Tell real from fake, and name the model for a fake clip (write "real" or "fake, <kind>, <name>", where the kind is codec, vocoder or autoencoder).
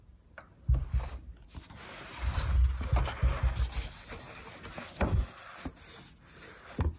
real